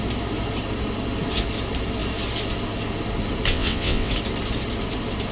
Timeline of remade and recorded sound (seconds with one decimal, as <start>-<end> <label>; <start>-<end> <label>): 0.0-3.5 recorded; 3.5-4.1 remade; 4.1-5.3 recorded